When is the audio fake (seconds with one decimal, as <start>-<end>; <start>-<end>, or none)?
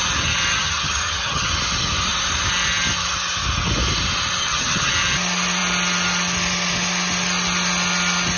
0.5-1.5; 4.4-4.9